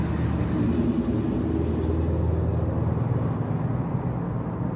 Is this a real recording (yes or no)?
yes